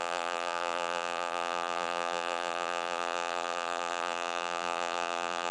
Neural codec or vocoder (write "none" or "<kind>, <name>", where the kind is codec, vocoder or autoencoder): vocoder, BigVGAN v2